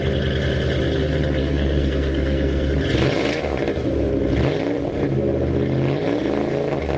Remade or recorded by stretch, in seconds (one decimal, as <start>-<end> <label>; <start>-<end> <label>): 0.0-1.4 recorded; 1.4-2.7 remade; 2.7-7.0 recorded